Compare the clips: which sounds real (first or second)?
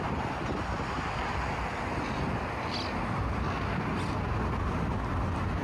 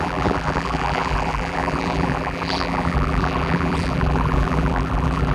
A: first